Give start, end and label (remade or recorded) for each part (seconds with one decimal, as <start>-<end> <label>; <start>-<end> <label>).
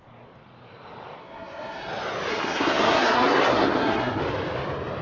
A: 0.0-1.2 recorded; 1.2-1.9 remade; 1.9-2.3 recorded; 2.3-4.2 remade; 4.2-5.0 recorded